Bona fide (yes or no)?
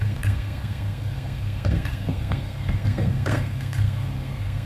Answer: no